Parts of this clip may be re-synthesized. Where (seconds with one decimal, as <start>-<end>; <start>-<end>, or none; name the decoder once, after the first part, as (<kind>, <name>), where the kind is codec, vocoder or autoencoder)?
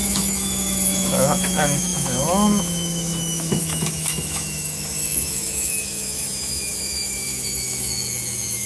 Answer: 0.0-8.7 (autoencoder, DAC-VAE)